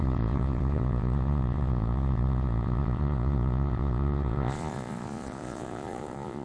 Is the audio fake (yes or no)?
yes